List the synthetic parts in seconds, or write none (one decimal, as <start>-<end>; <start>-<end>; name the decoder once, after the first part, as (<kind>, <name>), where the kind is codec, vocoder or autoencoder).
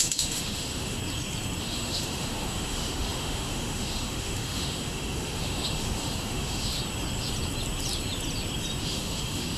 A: 0.0-1.0 (autoencoder, DAC-VAE); 1.6-6.8; 8.8-9.6